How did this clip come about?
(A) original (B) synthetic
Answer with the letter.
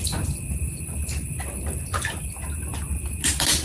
A